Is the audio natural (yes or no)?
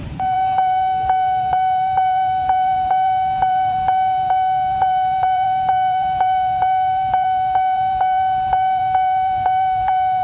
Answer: no